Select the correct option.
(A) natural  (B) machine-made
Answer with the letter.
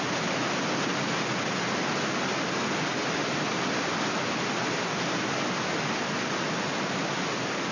A